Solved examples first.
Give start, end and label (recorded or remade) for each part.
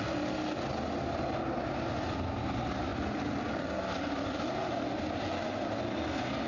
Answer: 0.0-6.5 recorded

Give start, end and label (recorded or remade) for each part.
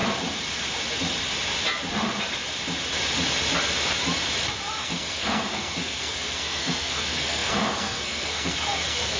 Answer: 0.0-4.8 recorded; 4.8-9.2 remade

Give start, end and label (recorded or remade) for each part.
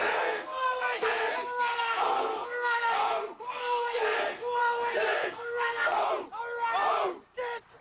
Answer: 0.0-4.6 remade; 4.6-5.1 recorded; 5.1-6.1 remade; 6.1-7.8 recorded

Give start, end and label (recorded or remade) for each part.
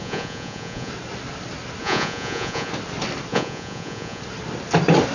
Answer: 0.0-0.9 remade; 0.9-1.8 recorded; 1.8-2.7 remade; 2.7-3.3 recorded; 3.3-4.2 remade; 4.2-5.1 recorded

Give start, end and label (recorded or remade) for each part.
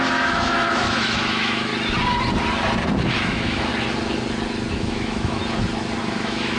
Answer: 0.0-1.7 remade; 1.7-3.0 recorded; 3.0-3.7 remade; 3.7-4.7 recorded; 4.7-5.4 remade; 5.4-6.0 recorded; 6.0-6.6 remade